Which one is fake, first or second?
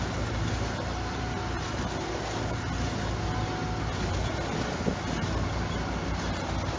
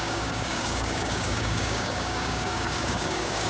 second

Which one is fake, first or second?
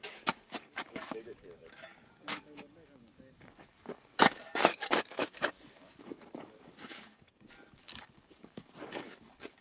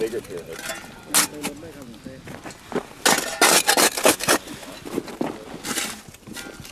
first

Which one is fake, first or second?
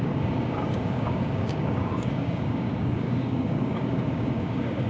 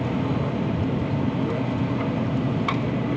first